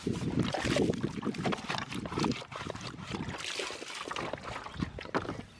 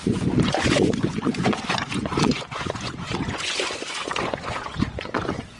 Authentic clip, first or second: first